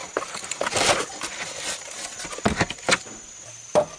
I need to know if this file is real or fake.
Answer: real